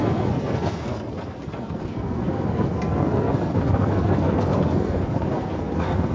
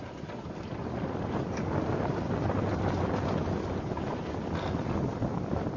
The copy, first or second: first